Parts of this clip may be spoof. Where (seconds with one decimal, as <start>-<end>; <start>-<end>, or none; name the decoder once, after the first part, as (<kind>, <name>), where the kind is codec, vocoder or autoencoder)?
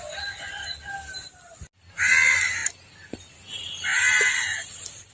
none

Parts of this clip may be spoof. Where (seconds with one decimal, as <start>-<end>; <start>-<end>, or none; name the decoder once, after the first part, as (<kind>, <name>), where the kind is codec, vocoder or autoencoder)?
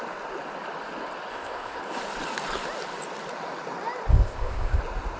1.3-1.8 (codec, ZipCodec); 4.1-4.8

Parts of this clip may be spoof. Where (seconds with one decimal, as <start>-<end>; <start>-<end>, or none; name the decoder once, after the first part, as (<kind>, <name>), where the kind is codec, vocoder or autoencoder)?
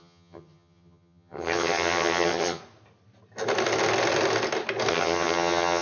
0.0-2.6 (vocoder, HiFi-GAN); 4.9-5.8